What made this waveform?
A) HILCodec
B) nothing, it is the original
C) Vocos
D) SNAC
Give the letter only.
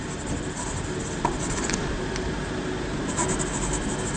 B